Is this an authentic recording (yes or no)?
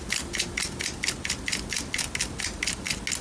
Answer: yes